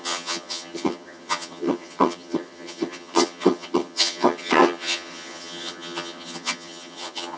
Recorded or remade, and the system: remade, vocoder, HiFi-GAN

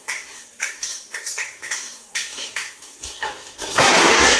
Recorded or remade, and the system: remade, codec, SNAC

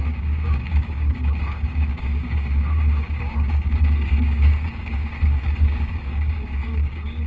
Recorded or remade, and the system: remade, codec, DAC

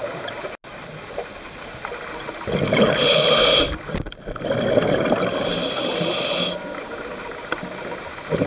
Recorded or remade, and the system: recorded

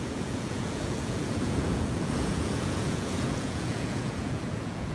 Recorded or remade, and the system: remade, vocoder, Vocos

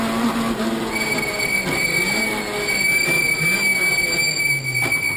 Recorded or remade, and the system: recorded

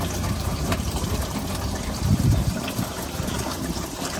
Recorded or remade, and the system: remade, vocoder, BigVGAN v2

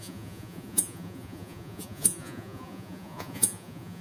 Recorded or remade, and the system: remade, vocoder, Vocos